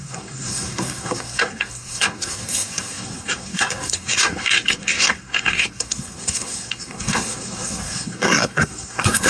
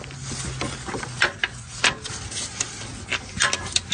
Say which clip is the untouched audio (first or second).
second